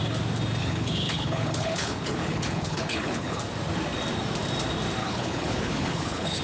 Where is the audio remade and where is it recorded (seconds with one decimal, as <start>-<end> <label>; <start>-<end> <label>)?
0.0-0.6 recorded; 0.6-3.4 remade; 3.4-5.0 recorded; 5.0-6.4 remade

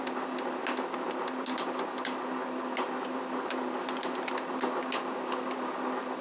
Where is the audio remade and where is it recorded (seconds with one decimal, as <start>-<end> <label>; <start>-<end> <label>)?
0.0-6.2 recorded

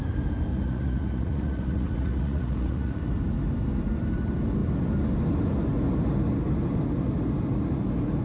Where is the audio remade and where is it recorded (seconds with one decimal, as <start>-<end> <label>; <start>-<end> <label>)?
0.0-0.5 recorded; 0.5-3.0 remade; 3.0-8.2 recorded

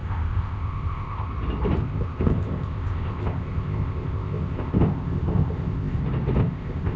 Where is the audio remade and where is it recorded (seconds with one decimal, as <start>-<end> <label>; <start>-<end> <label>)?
0.0-1.3 remade; 1.3-1.8 recorded; 1.8-6.0 remade; 6.0-6.4 recorded; 6.4-7.0 remade